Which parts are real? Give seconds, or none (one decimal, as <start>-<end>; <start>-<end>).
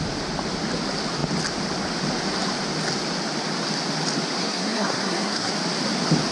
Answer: 0.0-4.4; 5.5-6.3